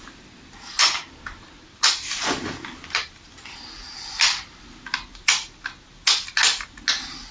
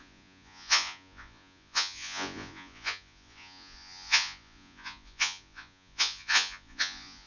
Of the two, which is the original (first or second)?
first